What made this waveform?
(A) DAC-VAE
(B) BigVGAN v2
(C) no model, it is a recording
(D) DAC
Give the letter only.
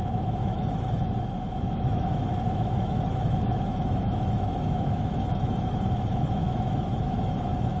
A